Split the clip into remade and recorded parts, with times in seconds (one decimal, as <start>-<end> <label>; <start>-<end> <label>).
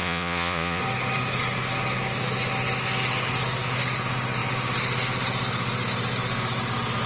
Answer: 0.0-0.8 remade; 0.8-7.1 recorded